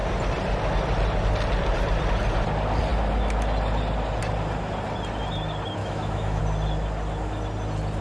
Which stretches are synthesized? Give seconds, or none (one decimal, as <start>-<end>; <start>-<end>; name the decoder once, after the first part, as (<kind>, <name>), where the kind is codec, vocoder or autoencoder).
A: 5.8-6.4 (autoencoder, DAC-VAE)